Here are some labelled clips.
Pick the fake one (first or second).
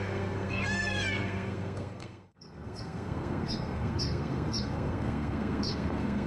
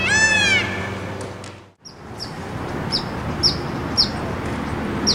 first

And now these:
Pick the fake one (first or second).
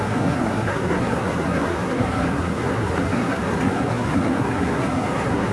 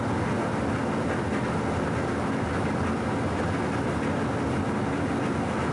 first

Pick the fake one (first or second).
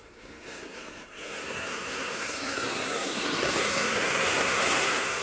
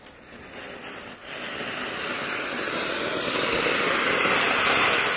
first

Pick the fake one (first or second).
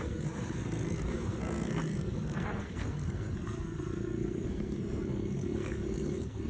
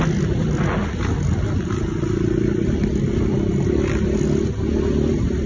first